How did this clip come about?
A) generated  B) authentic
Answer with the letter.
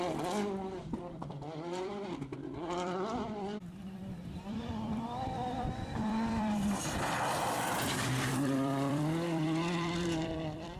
A